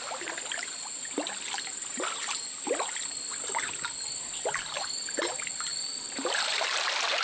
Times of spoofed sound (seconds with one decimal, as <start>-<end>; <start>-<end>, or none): 5.7-7.2